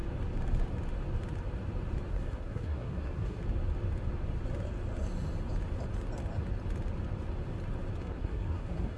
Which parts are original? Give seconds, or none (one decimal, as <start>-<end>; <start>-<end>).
0.0-2.1; 3.4-8.0